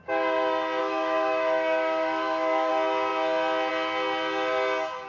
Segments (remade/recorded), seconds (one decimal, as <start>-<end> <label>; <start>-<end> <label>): 0.0-0.8 recorded; 0.8-2.7 remade; 2.7-5.1 recorded

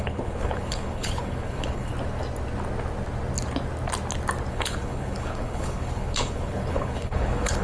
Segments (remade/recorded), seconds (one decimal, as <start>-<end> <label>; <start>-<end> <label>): 0.0-1.9 remade; 1.9-4.5 recorded; 4.5-7.6 remade

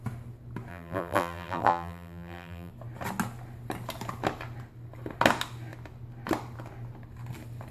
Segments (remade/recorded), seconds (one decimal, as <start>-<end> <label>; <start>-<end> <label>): 0.0-0.7 recorded; 0.7-2.7 remade; 2.7-7.7 recorded

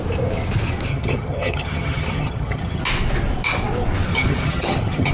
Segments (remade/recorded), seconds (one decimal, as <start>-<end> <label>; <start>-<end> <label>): 0.0-0.9 recorded; 0.9-2.8 remade; 2.8-4.1 recorded; 4.1-5.1 remade

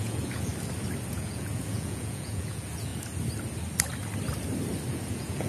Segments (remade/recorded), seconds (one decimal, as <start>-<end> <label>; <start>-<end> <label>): 0.0-0.5 remade; 0.5-1.1 recorded; 1.1-2.9 remade; 2.9-4.9 recorded; 4.9-5.5 remade

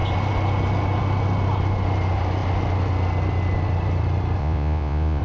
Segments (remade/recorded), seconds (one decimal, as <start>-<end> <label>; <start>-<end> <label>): 0.0-4.4 recorded; 4.4-5.2 remade

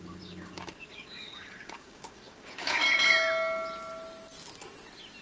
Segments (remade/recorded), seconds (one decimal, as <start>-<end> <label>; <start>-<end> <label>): 0.0-2.8 remade; 2.8-5.2 recorded